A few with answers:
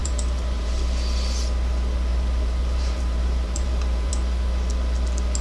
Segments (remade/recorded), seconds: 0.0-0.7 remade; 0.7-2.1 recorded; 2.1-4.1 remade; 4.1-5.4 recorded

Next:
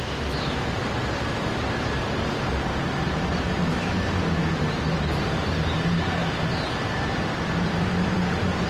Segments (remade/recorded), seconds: 0.0-0.8 remade; 0.8-2.0 recorded; 2.0-8.7 remade

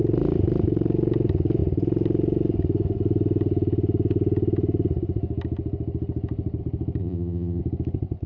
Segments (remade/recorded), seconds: 0.0-7.0 recorded; 7.0-7.6 remade; 7.6-8.3 recorded

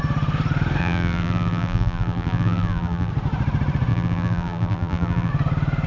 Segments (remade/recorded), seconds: 0.0-0.8 recorded; 0.8-3.1 remade; 3.1-3.9 recorded; 3.9-5.3 remade; 5.3-5.9 recorded

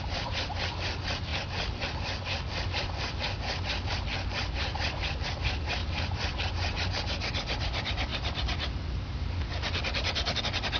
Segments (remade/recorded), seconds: 0.0-5.8 recorded; 5.8-6.4 remade; 6.4-8.1 recorded; 8.1-10.4 remade; 10.4-10.8 recorded

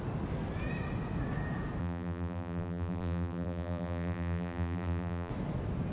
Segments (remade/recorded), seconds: 0.0-1.8 recorded; 1.8-5.3 remade; 5.3-5.9 recorded